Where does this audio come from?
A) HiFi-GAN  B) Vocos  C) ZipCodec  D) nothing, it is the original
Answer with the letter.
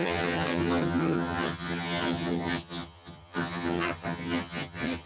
A